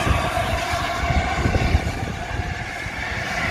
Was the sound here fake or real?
real